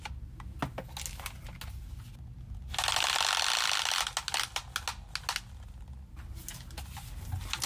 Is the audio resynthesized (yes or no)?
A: no